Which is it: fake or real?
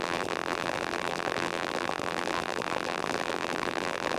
fake